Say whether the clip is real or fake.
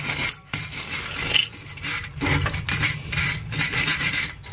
real